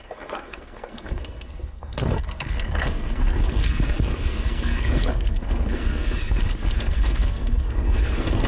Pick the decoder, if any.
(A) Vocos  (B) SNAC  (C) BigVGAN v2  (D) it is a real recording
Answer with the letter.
B